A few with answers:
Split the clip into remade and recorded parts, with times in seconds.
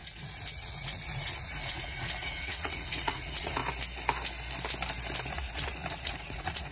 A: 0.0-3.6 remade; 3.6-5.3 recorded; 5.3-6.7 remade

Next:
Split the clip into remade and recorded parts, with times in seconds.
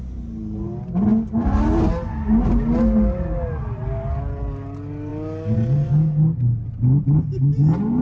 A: 0.0-8.0 recorded